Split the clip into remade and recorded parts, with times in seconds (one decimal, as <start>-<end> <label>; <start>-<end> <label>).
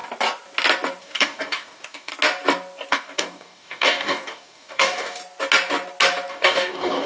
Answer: 0.0-1.0 recorded; 1.0-2.1 remade; 2.1-2.9 recorded; 2.9-5.2 remade; 5.2-6.3 recorded; 6.3-7.1 remade